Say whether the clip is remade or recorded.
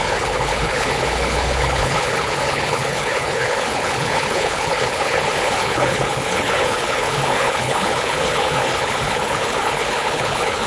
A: remade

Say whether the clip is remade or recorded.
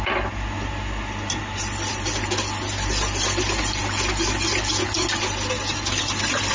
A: recorded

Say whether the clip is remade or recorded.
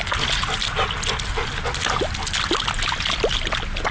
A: recorded